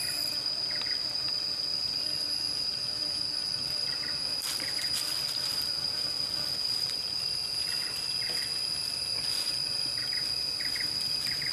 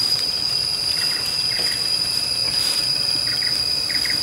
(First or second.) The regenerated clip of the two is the second